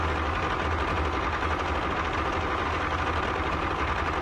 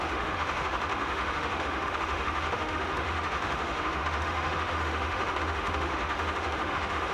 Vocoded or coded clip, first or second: second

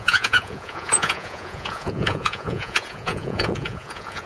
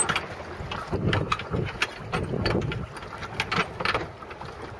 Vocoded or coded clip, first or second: first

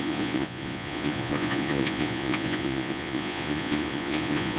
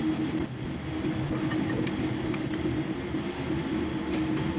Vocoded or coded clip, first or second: first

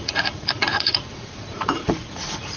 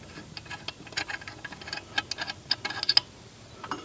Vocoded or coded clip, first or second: first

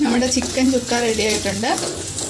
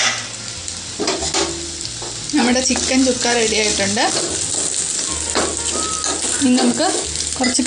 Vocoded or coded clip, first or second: first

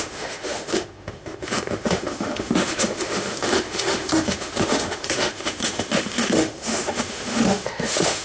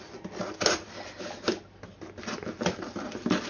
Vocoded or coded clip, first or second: first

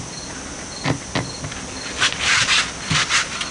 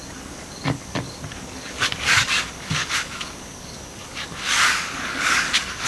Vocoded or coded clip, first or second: second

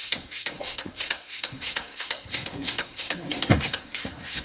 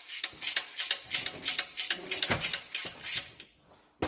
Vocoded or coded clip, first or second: first